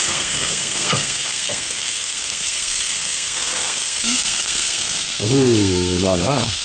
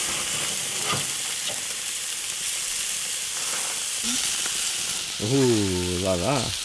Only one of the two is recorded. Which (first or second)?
second